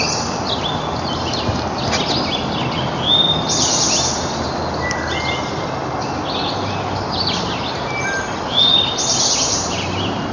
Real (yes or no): yes